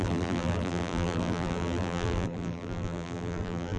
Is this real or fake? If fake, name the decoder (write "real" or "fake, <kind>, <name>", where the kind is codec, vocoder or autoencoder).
fake, vocoder, BigVGAN v2